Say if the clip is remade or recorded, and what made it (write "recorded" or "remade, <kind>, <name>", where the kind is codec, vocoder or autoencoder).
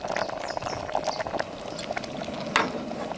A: recorded